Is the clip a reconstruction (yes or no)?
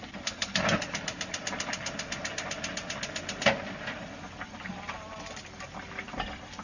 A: no